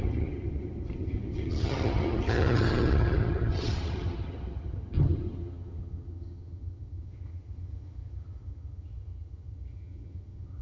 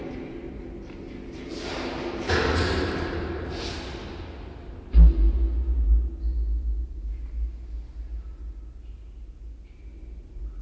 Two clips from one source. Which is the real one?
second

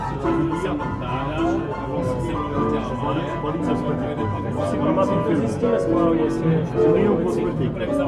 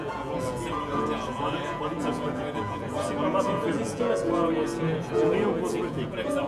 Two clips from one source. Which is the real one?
first